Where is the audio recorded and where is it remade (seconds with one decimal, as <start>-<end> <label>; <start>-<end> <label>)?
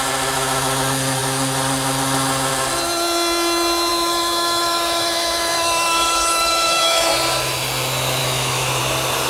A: 0.0-3.9 recorded; 3.9-7.1 remade; 7.1-8.2 recorded; 8.2-8.8 remade; 8.8-9.3 recorded